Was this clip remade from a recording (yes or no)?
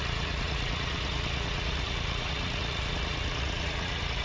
yes